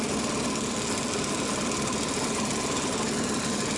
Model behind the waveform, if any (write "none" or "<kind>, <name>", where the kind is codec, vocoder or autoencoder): none